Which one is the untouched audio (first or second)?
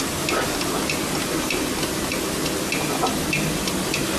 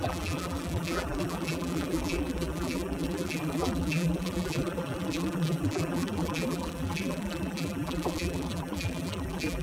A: first